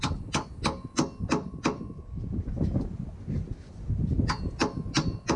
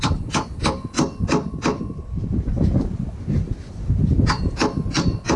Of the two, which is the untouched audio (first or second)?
first